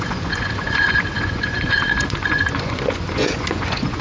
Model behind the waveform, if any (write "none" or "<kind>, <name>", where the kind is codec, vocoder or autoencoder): vocoder, Vocos